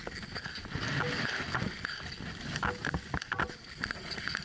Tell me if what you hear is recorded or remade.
recorded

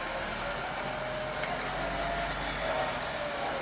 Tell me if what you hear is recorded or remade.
recorded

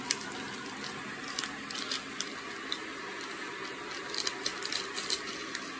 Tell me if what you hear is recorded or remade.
recorded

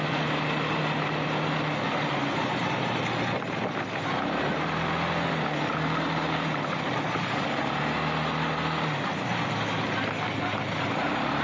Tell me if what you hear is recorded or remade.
recorded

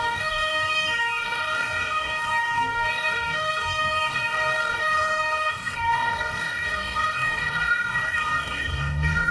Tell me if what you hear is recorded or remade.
remade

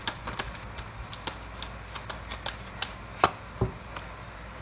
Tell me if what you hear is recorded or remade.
recorded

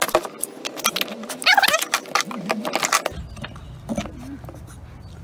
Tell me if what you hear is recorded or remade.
recorded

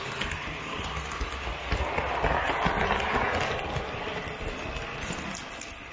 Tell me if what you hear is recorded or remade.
recorded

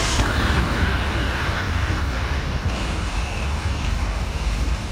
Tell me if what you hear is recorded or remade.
remade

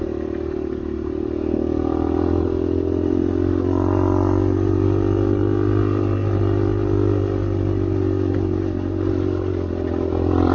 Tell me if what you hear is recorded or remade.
recorded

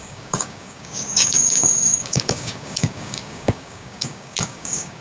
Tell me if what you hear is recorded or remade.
remade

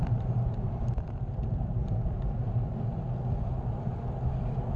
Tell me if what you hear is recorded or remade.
recorded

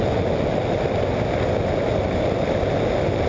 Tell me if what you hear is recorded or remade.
recorded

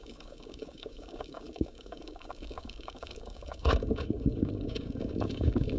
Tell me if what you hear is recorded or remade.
remade